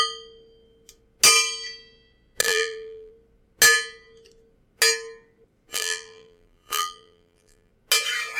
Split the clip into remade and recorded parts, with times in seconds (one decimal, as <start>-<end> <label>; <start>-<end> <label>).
0.0-2.4 recorded; 2.4-3.1 remade; 3.1-5.7 recorded; 5.7-7.7 remade; 7.7-8.4 recorded